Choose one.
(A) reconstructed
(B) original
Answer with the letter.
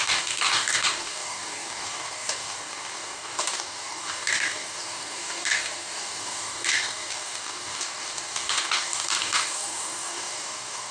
A